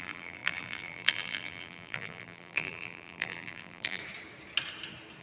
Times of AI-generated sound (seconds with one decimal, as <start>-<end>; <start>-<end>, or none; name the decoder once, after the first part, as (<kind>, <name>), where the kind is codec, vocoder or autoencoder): 0.0-4.0 (vocoder, BigVGAN v2)